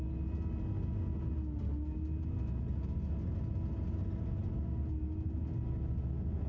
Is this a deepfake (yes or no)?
no